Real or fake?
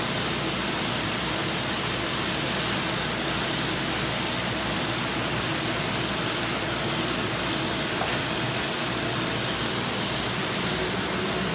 real